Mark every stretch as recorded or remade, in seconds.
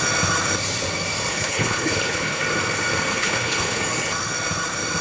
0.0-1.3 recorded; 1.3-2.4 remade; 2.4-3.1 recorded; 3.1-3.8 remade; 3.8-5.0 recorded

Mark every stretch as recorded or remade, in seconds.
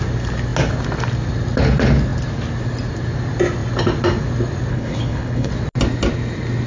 0.0-4.7 recorded; 4.7-5.5 remade; 5.5-6.7 recorded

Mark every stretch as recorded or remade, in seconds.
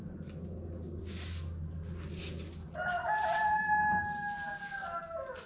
0.0-5.5 recorded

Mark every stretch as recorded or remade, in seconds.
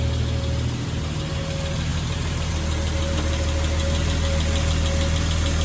0.0-5.6 recorded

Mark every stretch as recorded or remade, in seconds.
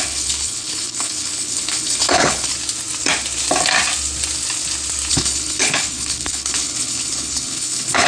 0.0-2.5 remade; 2.5-5.1 recorded; 5.1-8.1 remade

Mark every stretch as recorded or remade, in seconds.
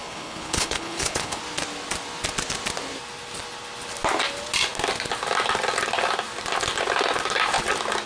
0.0-1.4 remade; 1.4-8.1 recorded